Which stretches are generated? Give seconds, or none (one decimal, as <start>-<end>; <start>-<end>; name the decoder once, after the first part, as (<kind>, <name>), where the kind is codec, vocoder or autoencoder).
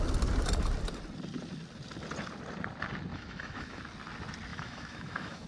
3.1-3.8 (autoencoder, DAC-VAE); 4.5-5.5